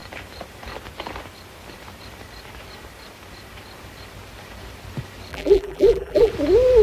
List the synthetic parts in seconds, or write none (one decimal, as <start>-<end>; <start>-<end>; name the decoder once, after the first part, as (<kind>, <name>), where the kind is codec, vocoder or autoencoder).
5.3-6.3 (vocoder, BigVGAN v2)